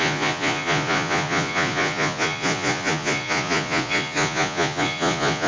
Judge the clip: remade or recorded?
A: remade